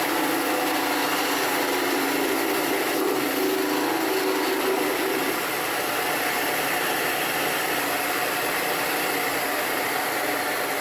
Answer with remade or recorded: recorded